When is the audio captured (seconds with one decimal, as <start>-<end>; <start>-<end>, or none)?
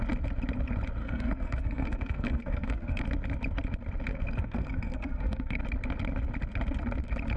0.0-1.0; 3.0-4.1; 5.6-7.4